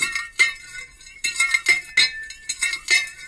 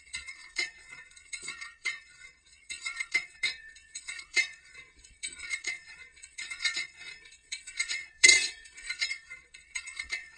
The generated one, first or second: second